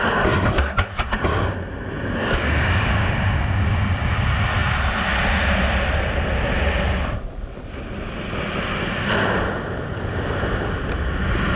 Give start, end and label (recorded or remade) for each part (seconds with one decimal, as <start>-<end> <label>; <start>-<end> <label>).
0.0-2.2 recorded; 2.2-3.1 remade; 3.1-11.6 recorded